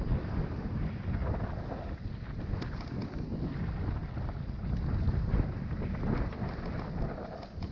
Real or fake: real